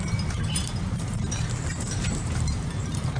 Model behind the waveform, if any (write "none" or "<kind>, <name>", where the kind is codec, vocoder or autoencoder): vocoder, BigVGAN v2